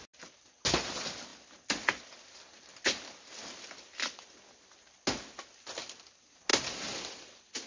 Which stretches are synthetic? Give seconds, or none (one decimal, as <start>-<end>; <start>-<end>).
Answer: none